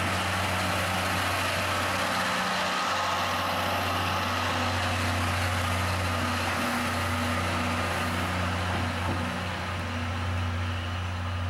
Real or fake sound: real